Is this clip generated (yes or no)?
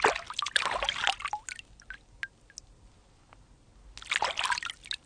no